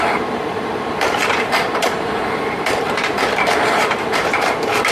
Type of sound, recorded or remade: remade